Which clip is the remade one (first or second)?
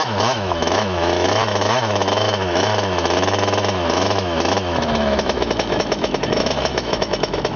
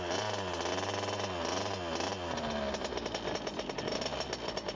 first